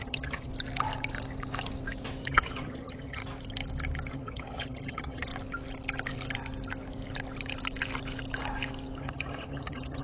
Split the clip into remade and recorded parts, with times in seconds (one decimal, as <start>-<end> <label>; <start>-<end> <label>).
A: 0.0-0.5 remade; 0.5-2.3 recorded; 2.3-3.2 remade; 3.2-4.1 recorded; 4.1-5.3 remade; 5.3-9.0 recorded; 9.0-10.0 remade